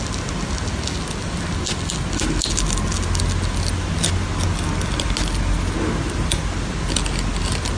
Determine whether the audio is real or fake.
real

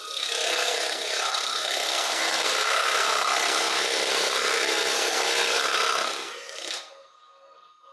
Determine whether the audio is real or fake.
fake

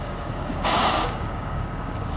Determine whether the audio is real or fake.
fake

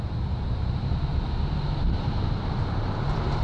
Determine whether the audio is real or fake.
fake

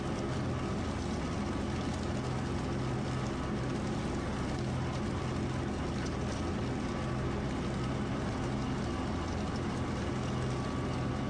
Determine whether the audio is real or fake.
real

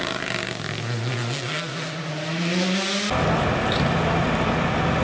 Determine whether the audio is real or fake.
real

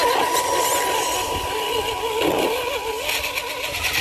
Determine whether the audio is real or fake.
real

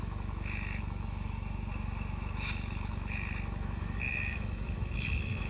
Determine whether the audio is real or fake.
fake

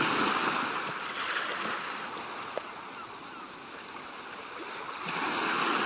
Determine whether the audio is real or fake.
real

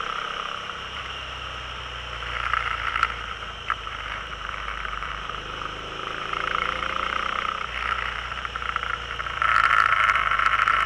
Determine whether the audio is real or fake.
fake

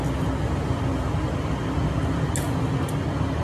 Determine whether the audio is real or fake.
real